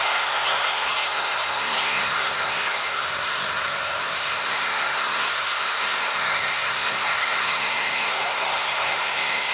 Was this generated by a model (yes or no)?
yes